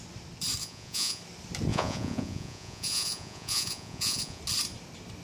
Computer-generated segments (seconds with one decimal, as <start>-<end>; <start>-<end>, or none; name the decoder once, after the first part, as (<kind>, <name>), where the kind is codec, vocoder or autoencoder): 0.6-1.2 (vocoder, Vocos); 1.7-4.4